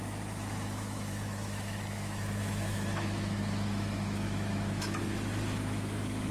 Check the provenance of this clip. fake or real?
fake